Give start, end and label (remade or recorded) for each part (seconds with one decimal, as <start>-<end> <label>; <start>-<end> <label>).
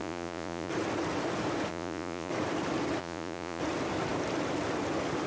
0.0-0.7 remade; 0.7-1.7 recorded; 1.7-2.3 remade; 2.3-3.0 recorded; 3.0-3.6 remade; 3.6-5.3 recorded